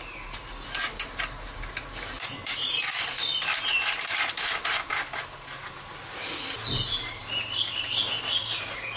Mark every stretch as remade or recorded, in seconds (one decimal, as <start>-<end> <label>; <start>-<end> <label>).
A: 0.0-9.0 recorded